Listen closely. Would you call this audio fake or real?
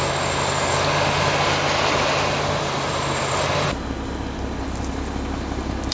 real